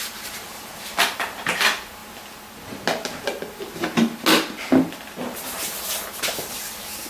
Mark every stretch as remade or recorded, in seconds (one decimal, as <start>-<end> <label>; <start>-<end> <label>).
0.0-7.1 recorded